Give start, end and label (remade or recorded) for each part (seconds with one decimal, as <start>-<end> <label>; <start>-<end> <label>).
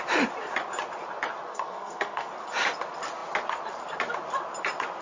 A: 0.0-1.5 recorded; 1.5-2.3 remade; 2.3-5.0 recorded